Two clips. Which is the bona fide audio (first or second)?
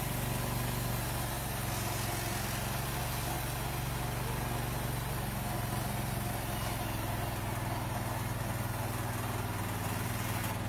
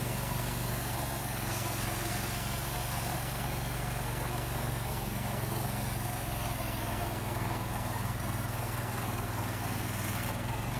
first